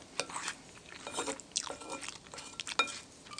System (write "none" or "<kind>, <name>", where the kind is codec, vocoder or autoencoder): none